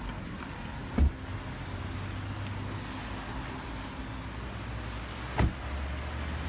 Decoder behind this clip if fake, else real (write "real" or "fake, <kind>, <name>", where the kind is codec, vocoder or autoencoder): real